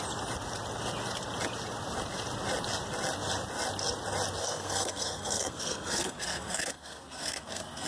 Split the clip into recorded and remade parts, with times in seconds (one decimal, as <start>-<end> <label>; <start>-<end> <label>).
0.0-4.4 recorded; 4.4-7.9 remade